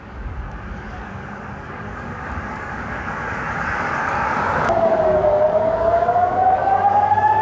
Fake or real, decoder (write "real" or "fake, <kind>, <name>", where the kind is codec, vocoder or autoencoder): fake, codec, DAC